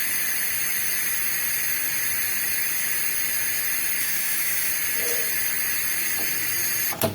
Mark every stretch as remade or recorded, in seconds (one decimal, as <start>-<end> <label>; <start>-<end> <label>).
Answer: 0.0-4.0 recorded; 4.0-4.7 remade; 4.7-7.1 recorded